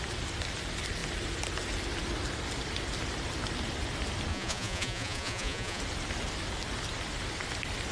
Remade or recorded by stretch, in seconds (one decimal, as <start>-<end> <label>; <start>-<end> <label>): 0.0-4.3 recorded; 4.3-5.8 remade; 5.8-7.9 recorded